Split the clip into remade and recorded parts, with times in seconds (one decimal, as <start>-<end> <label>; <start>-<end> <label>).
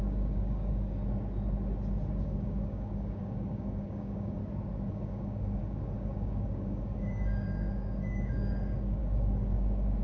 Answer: 0.0-1.0 remade; 1.0-2.2 recorded; 2.2-4.4 remade; 4.4-4.9 recorded; 4.9-10.0 remade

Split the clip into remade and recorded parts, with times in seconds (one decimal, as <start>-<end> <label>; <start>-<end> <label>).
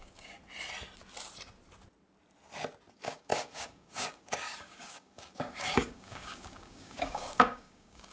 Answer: 0.0-0.4 remade; 0.4-2.9 recorded; 2.9-8.1 remade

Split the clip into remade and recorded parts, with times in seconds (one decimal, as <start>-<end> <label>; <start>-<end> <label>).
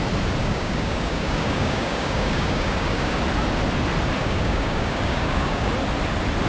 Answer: 0.0-0.4 recorded; 0.4-3.2 remade; 3.2-4.2 recorded; 4.2-5.7 remade; 5.7-6.5 recorded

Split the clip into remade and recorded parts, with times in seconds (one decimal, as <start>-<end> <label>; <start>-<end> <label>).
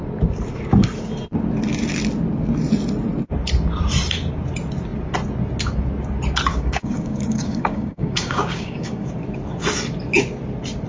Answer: 0.0-6.5 recorded; 6.5-9.1 remade; 9.1-10.9 recorded